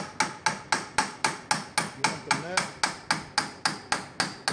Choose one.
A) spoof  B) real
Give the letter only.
B